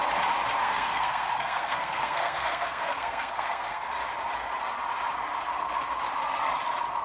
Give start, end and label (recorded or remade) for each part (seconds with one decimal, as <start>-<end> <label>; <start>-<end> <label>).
0.0-0.6 recorded; 0.6-3.9 remade; 3.9-7.0 recorded